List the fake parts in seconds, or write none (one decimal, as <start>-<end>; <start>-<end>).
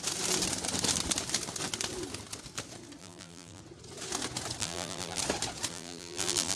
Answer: 3.0-3.6; 4.6-5.2; 5.7-6.6